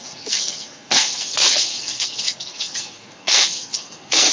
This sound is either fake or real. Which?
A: fake